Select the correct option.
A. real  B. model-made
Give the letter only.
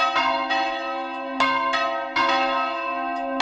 A